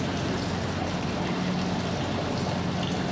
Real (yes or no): yes